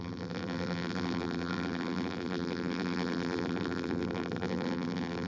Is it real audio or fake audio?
fake